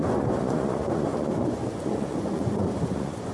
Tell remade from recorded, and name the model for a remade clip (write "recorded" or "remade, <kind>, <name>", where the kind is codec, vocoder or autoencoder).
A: remade, vocoder, Vocos